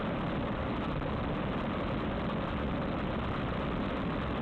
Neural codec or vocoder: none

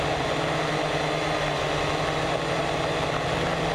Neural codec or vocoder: none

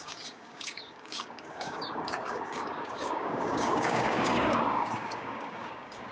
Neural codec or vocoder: codec, DAC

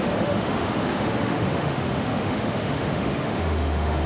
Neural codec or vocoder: autoencoder, DAC-VAE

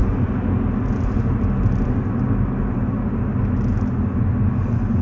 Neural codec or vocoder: none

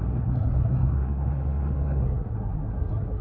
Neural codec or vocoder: codec, SNAC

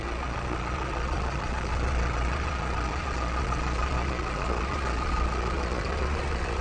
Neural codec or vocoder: vocoder, Vocos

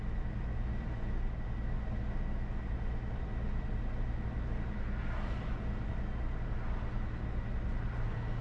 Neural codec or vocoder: none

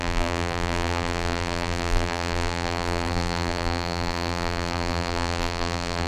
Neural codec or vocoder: vocoder, BigVGAN v2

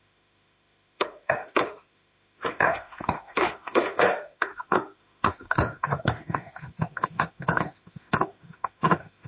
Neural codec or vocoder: autoencoder, DAC-VAE